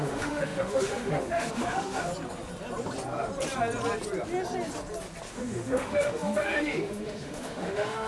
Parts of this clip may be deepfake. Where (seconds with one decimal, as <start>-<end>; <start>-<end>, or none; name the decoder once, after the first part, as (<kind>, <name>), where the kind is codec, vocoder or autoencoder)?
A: 0.0-2.1 (autoencoder, DAC-VAE); 5.3-8.1